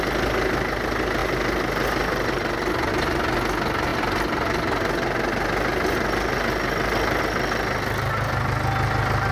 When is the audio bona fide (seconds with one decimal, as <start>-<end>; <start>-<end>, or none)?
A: 0.0-9.3